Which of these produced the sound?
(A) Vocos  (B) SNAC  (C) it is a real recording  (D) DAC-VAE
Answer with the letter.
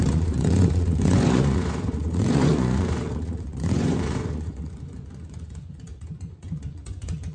A